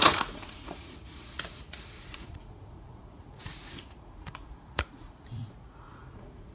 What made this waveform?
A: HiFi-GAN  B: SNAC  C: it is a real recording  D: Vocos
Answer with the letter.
D